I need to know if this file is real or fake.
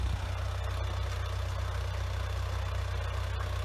real